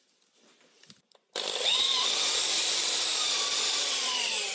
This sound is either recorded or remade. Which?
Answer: remade